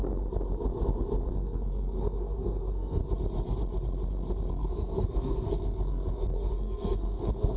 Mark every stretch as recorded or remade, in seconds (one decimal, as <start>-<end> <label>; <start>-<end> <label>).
0.0-1.3 recorded; 1.3-3.0 remade; 3.0-4.5 recorded; 4.5-7.6 remade